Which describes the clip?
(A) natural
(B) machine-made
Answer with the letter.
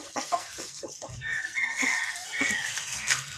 B